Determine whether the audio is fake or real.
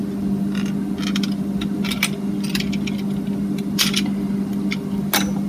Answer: real